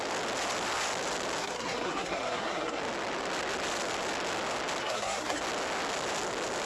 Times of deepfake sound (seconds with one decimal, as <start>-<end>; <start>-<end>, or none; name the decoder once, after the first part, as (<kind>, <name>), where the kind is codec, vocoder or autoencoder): 1.4-2.8 (codec, SNAC); 4.8-5.4